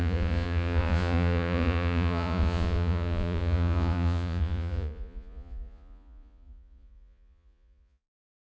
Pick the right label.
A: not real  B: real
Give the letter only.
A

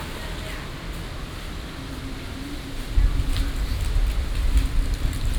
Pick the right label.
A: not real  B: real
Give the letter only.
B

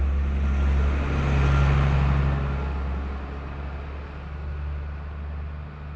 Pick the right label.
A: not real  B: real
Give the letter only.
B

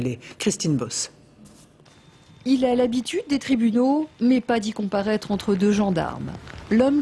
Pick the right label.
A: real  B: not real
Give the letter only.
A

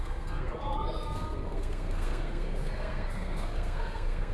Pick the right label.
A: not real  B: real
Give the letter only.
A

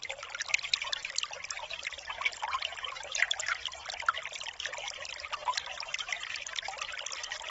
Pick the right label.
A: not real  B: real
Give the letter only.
A